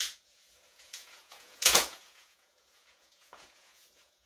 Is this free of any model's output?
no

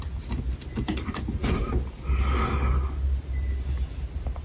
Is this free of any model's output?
yes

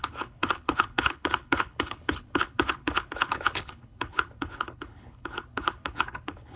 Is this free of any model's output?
no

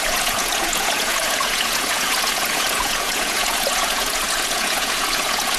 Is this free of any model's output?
no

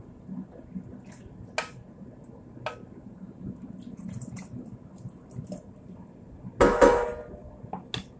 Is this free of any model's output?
yes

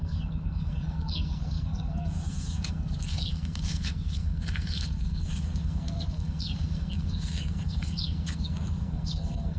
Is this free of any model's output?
no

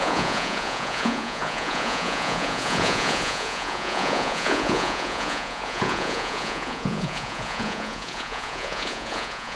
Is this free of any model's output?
no